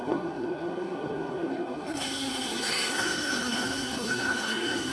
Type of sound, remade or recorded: remade